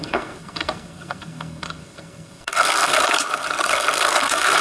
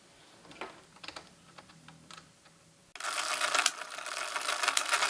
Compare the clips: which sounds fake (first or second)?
first